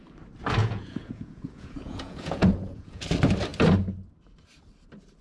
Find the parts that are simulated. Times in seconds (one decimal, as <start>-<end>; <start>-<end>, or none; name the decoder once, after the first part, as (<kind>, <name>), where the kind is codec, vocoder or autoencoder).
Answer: 0.6-3.0 (vocoder, Vocos)